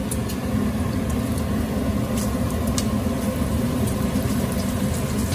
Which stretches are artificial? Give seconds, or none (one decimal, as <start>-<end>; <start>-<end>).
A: 3.5-4.8